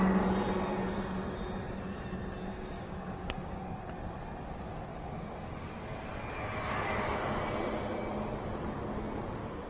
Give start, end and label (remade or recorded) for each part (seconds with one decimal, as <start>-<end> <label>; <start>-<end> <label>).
0.0-2.5 recorded; 2.5-3.6 remade; 3.6-4.9 recorded; 4.9-5.7 remade; 5.7-9.7 recorded